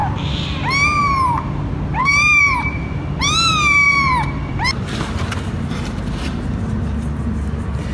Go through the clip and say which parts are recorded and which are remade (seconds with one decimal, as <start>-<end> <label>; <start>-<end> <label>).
0.0-1.0 recorded; 1.0-1.6 remade; 1.6-2.0 recorded; 2.0-6.7 remade; 6.7-7.9 recorded